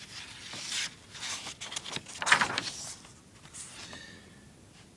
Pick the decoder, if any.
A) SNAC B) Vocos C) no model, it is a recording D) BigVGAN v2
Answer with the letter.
C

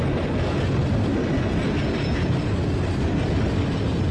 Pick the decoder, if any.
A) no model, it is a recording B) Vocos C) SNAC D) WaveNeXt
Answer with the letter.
A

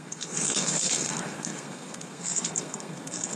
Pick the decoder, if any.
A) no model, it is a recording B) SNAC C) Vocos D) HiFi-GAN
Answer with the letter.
B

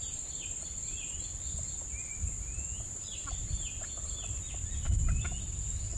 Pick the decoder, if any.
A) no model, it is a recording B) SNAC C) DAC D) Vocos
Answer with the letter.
A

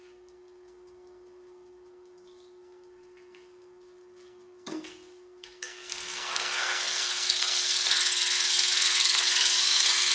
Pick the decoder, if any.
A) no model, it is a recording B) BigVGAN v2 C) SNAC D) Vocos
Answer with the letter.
C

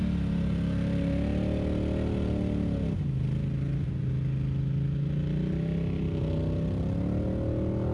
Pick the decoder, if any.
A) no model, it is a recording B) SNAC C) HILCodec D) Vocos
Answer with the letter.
A